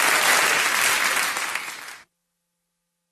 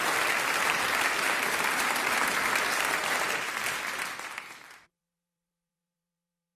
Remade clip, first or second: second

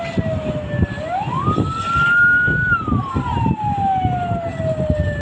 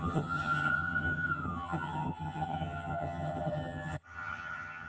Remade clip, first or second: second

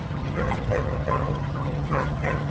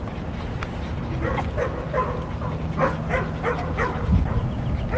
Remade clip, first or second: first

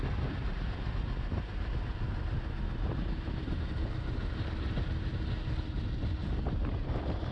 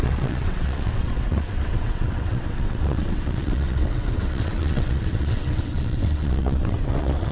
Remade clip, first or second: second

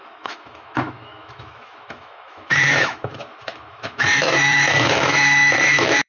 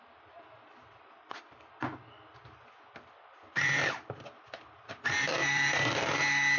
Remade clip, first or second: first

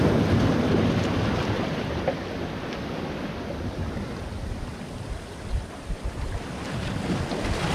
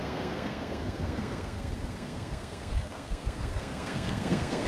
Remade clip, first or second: second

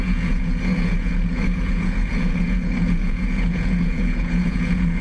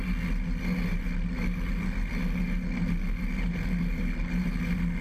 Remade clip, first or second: first